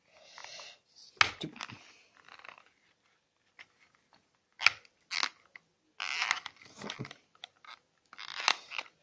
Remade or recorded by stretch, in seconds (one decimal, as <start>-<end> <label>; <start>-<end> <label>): 0.0-9.0 recorded

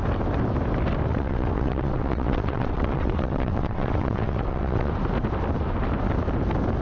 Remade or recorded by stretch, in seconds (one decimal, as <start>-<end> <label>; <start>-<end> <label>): 0.0-1.1 recorded; 1.1-4.9 remade; 4.9-6.8 recorded